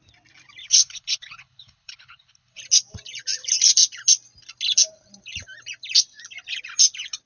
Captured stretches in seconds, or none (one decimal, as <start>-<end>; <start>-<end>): 0.0-0.6; 2.6-7.3